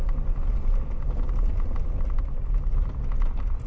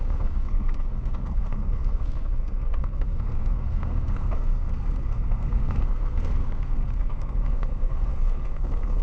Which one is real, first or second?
first